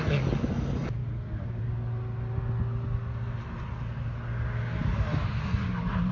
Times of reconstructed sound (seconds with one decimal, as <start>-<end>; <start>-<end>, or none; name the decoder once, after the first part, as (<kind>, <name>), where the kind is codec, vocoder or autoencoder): none